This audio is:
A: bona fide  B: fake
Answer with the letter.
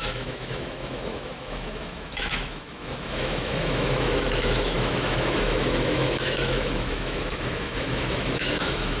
B